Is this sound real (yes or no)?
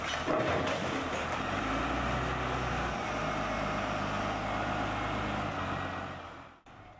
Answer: yes